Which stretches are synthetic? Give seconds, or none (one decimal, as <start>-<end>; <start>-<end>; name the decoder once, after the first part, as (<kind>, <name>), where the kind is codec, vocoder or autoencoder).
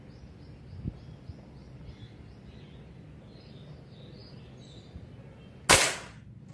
none